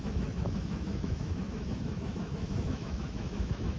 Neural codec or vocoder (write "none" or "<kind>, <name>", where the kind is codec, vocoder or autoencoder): autoencoder, DAC-VAE